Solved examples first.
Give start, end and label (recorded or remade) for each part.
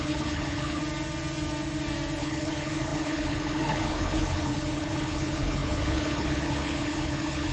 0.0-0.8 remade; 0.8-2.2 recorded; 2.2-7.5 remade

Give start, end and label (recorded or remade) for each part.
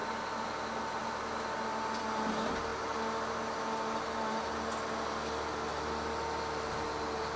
0.0-7.4 recorded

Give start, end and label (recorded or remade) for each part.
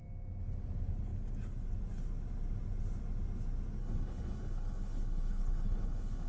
0.0-3.8 recorded; 3.8-6.3 remade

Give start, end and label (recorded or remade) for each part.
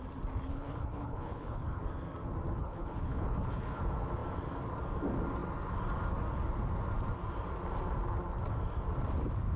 0.0-0.5 recorded; 0.5-1.8 remade; 1.8-2.6 recorded; 2.6-3.8 remade; 3.8-9.6 recorded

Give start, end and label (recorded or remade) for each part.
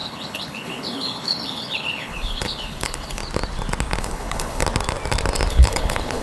0.0-3.2 remade; 3.2-4.0 recorded; 4.0-4.6 remade; 4.6-5.5 recorded; 5.5-6.2 remade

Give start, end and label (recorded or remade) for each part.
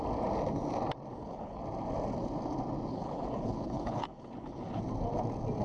0.0-1.1 recorded; 1.1-1.6 remade; 1.6-2.9 recorded; 2.9-4.8 remade; 4.8-5.6 recorded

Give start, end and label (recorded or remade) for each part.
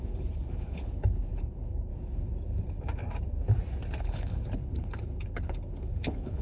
0.0-1.9 remade; 1.9-4.0 recorded; 4.0-6.4 remade